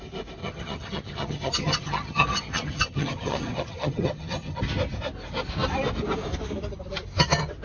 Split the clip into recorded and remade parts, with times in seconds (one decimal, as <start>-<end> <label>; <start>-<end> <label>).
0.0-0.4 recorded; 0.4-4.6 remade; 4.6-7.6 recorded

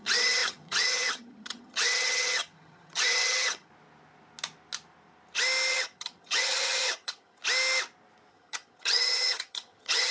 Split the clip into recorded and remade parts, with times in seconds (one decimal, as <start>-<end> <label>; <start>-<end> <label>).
0.0-3.7 remade; 3.7-5.7 recorded; 5.7-7.4 remade; 7.4-8.3 recorded; 8.3-10.1 remade

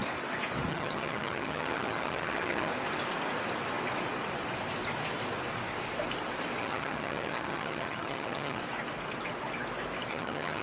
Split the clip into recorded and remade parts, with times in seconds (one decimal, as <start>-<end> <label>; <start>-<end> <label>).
0.0-0.7 recorded; 0.7-2.7 remade; 2.7-6.6 recorded; 6.6-8.6 remade; 8.6-10.1 recorded; 10.1-10.6 remade